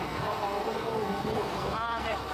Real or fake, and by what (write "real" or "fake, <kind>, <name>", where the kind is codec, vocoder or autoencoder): fake, codec, SNAC